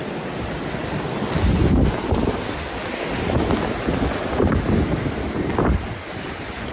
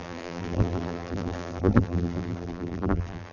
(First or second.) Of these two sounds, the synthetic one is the second